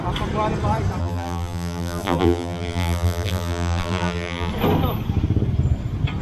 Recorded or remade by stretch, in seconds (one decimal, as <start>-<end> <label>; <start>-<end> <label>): 0.0-1.0 recorded; 1.0-4.5 remade; 4.5-6.2 recorded